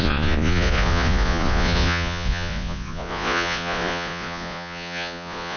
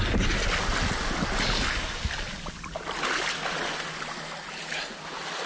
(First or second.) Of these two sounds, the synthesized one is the first